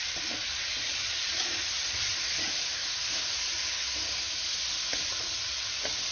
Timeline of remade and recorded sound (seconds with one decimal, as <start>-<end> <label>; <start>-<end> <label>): 0.0-2.1 remade; 2.1-5.2 recorded; 5.2-6.1 remade